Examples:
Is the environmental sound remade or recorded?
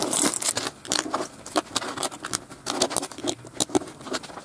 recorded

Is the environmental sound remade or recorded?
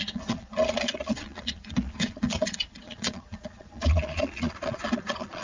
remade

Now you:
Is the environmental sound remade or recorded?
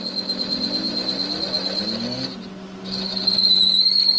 recorded